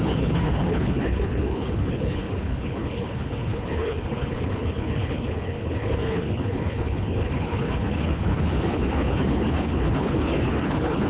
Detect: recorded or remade remade